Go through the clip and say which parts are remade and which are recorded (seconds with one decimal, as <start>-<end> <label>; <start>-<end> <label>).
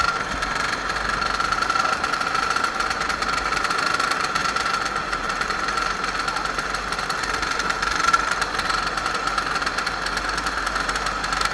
0.0-4.4 remade; 4.4-5.0 recorded; 5.0-9.7 remade; 9.7-10.2 recorded; 10.2-11.5 remade